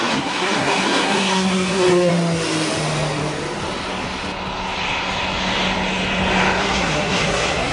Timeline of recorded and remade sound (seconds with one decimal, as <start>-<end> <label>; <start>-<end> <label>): 0.0-2.1 remade; 2.1-6.6 recorded; 6.6-7.7 remade